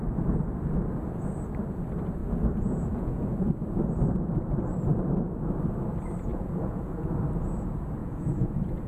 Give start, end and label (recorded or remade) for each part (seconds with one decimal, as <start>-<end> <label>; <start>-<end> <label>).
0.0-2.2 recorded; 2.2-3.5 remade; 3.5-6.3 recorded; 6.3-7.1 remade; 7.1-8.0 recorded; 8.0-8.9 remade